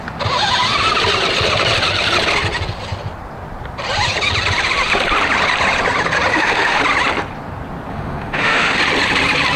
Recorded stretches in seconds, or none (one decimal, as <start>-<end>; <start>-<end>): 0.0-6.3; 6.8-7.9; 8.8-9.6